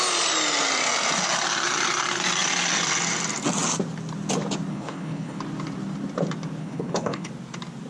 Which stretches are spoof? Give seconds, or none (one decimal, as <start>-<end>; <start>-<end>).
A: 4.7-5.4; 6.6-7.3